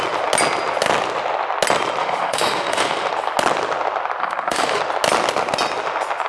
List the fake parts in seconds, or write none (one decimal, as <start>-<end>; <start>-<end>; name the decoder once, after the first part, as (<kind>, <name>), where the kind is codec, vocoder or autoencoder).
2.0-3.1 (autoencoder, DAC-VAE); 4.2-4.8

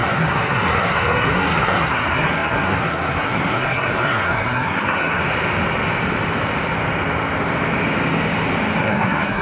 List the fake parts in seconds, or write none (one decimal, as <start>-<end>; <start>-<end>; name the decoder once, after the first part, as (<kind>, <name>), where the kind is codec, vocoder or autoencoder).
0.0-5.2 (codec, SNAC); 8.8-9.4

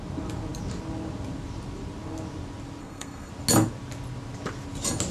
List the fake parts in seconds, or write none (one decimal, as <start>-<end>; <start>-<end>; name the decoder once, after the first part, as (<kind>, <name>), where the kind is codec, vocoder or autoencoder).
2.8-3.3 (codec, SNAC)

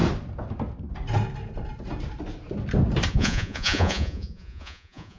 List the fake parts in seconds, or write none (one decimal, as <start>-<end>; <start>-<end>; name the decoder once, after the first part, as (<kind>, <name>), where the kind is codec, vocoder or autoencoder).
3.1-5.2 (vocoder, Vocos)